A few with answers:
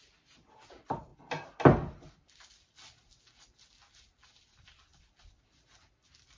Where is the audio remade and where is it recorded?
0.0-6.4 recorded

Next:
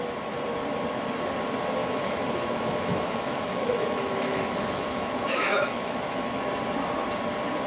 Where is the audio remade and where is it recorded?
0.0-1.8 recorded; 1.8-6.4 remade; 6.4-7.7 recorded